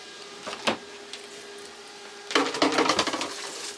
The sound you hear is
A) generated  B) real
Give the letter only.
B